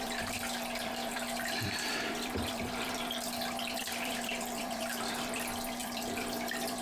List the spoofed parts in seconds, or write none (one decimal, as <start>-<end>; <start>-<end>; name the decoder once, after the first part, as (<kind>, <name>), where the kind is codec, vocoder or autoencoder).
0.0-6.8 (vocoder, BigVGAN v2)